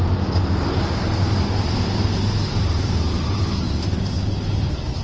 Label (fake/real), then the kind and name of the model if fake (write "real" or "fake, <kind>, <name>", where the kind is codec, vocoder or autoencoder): real